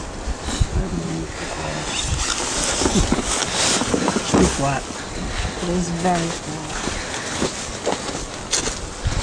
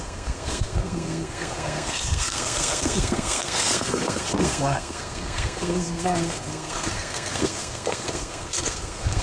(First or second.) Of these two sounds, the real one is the first